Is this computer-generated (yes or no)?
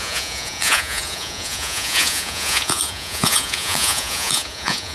yes